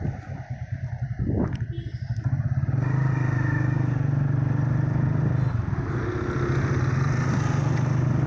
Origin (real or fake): real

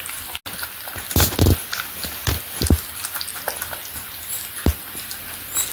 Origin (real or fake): real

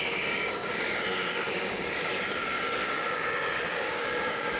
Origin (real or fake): fake